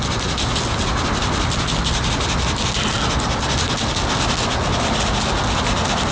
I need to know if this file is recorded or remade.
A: recorded